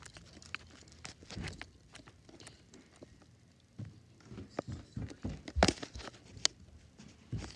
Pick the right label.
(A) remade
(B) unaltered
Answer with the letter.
B